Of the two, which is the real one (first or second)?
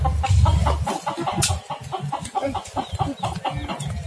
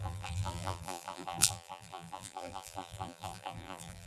first